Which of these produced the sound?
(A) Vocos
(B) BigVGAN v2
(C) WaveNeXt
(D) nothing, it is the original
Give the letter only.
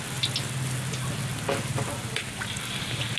D